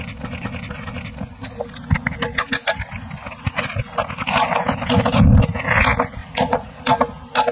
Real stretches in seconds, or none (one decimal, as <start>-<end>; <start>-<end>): 0.0-6.2; 6.8-7.5